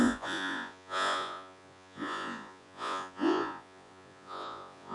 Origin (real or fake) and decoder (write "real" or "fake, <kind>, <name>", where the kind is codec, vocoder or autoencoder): fake, vocoder, Vocos